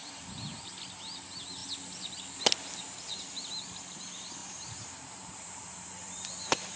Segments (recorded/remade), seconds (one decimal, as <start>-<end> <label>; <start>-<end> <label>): 0.0-0.7 remade; 0.7-4.4 recorded; 4.4-6.8 remade